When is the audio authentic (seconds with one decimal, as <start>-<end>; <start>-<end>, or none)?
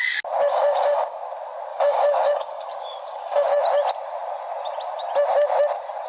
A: 0.0-0.5; 1.2-1.7; 3.5-6.1